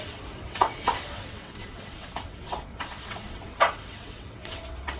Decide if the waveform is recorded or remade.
remade